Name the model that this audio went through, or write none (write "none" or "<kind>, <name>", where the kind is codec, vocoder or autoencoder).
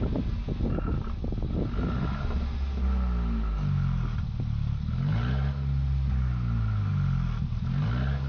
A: none